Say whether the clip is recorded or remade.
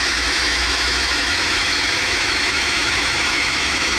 remade